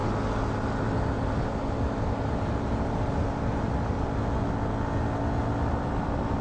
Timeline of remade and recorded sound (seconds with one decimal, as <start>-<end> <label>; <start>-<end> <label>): 0.0-6.4 recorded